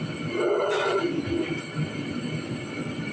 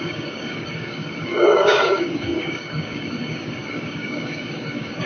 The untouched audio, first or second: first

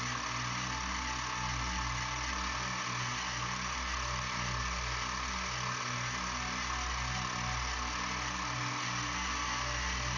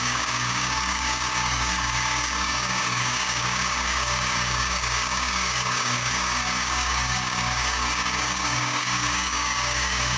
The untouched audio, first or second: first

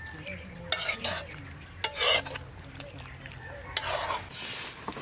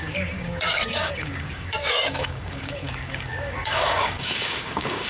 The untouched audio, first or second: first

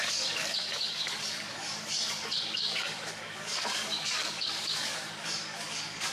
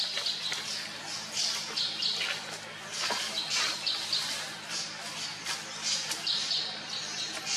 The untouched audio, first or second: second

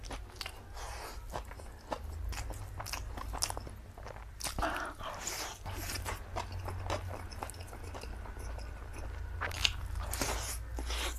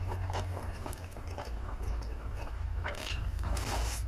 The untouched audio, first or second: first